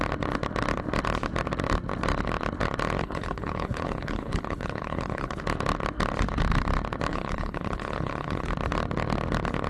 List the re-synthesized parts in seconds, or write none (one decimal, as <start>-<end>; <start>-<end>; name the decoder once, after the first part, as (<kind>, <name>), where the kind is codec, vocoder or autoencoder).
3.0-5.4 (codec, HILCodec); 7.1-8.5